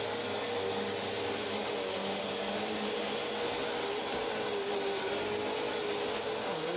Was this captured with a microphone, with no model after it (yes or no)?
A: yes